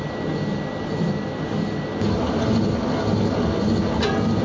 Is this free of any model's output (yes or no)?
yes